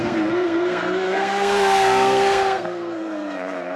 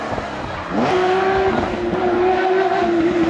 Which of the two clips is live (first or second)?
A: second